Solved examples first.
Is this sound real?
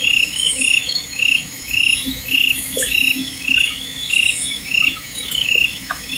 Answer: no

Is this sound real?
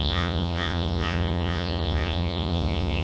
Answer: no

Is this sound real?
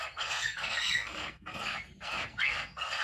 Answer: no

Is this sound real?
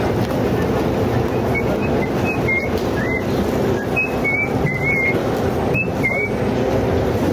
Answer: yes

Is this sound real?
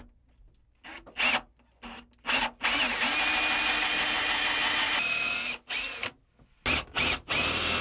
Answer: yes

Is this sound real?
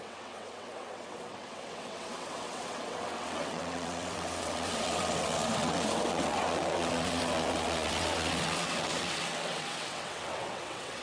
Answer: no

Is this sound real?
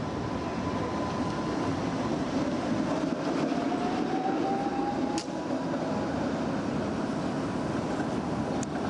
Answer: yes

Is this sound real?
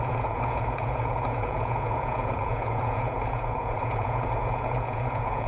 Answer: no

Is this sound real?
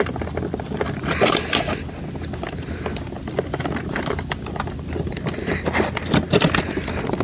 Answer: yes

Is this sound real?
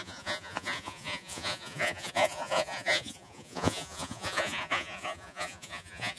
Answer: no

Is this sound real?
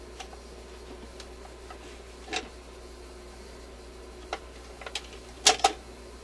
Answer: yes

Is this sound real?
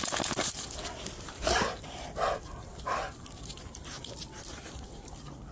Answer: yes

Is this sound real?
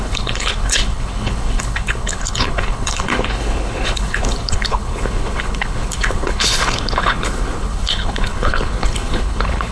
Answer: no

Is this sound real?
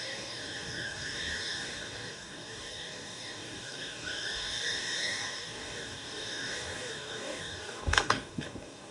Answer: no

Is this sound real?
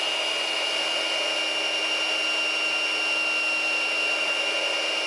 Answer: yes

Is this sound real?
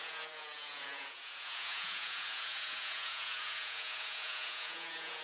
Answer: no